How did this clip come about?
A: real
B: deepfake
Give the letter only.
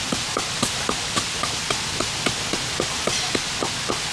A